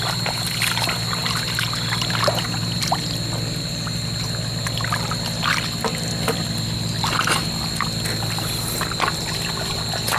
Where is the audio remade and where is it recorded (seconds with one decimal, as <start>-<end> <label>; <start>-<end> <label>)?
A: 0.0-10.2 recorded